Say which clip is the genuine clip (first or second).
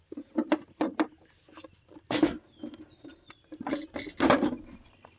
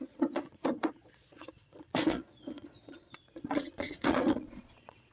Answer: first